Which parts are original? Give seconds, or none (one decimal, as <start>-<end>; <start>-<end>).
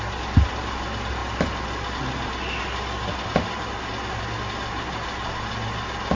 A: 0.0-6.1